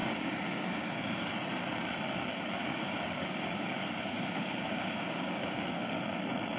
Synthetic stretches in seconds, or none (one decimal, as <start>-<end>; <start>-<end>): 0.0-1.3; 2.6-5.9